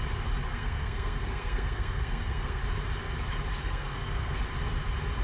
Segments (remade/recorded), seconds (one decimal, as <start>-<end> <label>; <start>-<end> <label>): 0.0-0.5 recorded; 0.5-2.6 remade; 2.6-3.5 recorded; 3.5-4.4 remade; 4.4-5.2 recorded